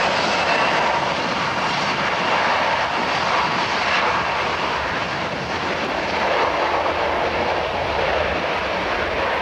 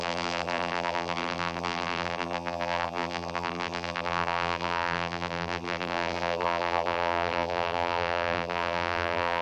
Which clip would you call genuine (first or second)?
first